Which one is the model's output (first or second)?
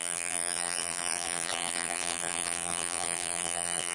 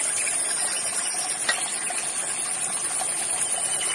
first